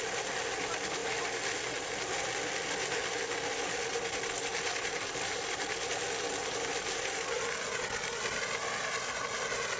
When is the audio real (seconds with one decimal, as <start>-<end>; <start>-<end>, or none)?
0.0-9.8